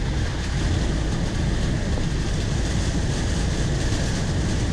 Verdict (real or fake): real